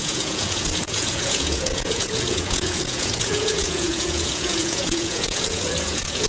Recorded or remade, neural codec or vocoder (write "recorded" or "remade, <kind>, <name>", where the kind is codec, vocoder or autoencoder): remade, vocoder, Vocos